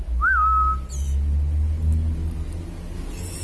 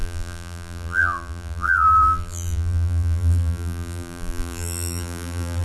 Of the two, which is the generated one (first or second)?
second